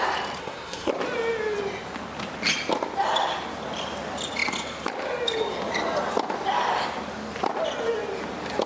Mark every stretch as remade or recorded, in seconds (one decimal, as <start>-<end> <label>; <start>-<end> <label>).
0.0-0.4 recorded; 0.4-0.9 remade; 0.9-8.7 recorded